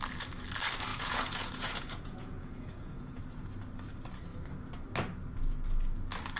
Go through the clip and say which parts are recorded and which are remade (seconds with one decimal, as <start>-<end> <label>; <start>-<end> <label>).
0.0-0.9 recorded; 0.9-3.5 remade; 3.5-6.4 recorded